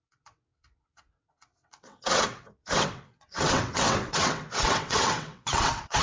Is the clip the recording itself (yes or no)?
no